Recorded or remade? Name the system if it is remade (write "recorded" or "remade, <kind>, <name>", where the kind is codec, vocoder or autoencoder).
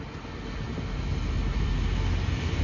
recorded